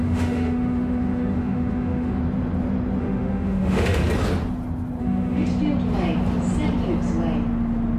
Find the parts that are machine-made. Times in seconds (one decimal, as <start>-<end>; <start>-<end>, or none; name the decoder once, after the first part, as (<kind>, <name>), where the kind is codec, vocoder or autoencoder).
0.0-2.2 (autoencoder, DAC-VAE); 3.0-4.0; 5.0-5.5